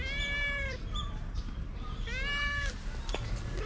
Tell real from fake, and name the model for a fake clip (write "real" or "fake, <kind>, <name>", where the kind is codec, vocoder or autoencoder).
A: real